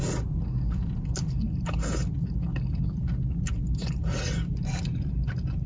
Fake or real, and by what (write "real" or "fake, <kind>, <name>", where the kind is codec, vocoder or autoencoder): real